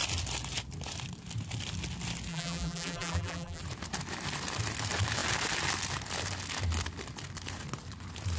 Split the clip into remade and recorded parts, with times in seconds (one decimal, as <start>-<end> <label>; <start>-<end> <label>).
0.0-2.3 recorded; 2.3-3.6 remade; 3.6-8.4 recorded